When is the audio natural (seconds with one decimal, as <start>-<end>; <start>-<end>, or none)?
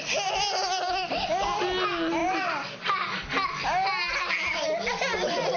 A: 0.0-5.6